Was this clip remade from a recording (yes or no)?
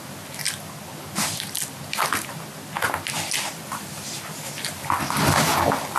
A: no